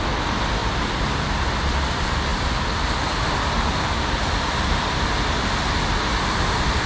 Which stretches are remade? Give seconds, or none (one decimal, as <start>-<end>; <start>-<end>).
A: none